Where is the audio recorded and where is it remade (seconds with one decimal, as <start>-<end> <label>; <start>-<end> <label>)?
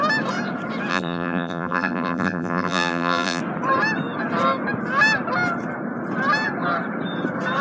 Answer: 0.0-0.9 recorded; 0.9-3.4 remade; 3.4-7.6 recorded